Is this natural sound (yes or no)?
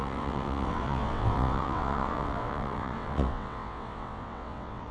no